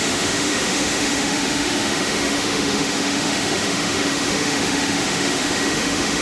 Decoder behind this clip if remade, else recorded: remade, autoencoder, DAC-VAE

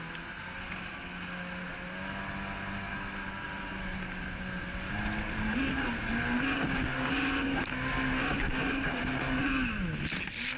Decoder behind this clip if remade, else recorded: recorded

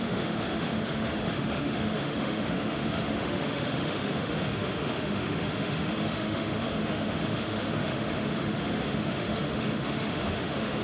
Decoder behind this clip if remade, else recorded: remade, autoencoder, DAC-VAE